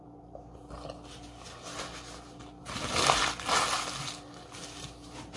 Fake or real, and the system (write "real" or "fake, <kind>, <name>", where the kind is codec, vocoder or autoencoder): real